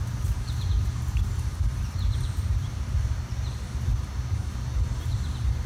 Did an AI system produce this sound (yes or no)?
yes